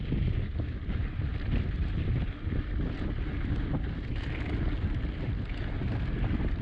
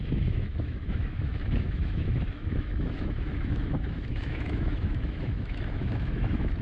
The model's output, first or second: second